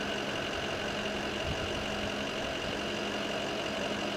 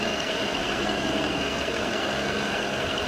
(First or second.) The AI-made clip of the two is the second